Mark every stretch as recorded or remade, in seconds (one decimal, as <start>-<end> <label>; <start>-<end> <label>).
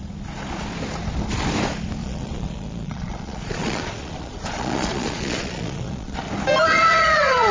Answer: 0.0-2.0 recorded; 2.0-6.2 remade; 6.2-6.7 recorded; 6.7-7.5 remade